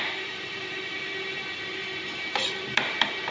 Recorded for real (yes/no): no